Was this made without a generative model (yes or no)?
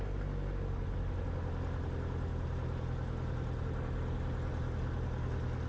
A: yes